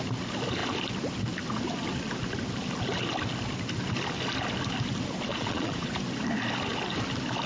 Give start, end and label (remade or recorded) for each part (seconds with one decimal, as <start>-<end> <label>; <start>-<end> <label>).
0.0-5.3 recorded; 5.3-5.9 remade; 5.9-7.5 recorded